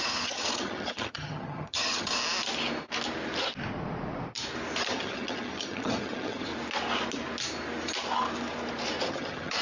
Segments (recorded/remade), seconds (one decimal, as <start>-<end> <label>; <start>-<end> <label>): 0.0-2.2 remade; 2.2-4.9 recorded; 4.9-6.5 remade; 6.5-9.1 recorded; 9.1-9.6 remade